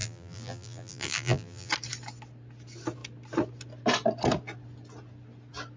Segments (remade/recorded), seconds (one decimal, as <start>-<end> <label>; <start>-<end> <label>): 0.0-1.7 remade; 1.7-5.8 recorded